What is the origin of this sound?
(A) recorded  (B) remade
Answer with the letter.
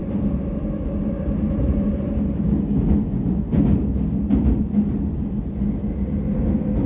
A